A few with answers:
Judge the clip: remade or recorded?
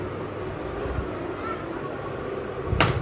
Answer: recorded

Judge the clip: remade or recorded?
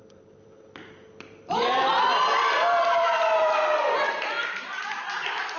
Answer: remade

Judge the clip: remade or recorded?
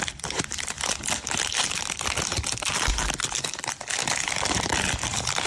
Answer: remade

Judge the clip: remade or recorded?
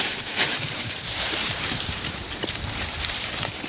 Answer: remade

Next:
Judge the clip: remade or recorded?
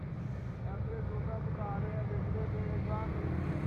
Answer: recorded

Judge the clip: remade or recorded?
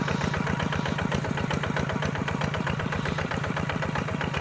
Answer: remade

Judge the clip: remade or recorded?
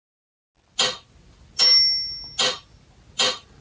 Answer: recorded